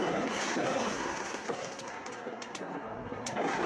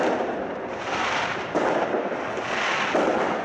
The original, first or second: second